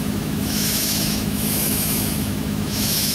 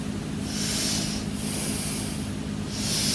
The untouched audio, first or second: second